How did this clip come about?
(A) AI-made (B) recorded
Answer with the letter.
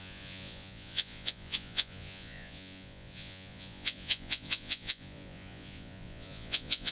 A